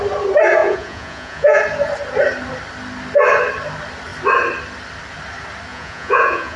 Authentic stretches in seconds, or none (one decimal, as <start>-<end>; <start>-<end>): 0.0-0.6; 1.6-5.7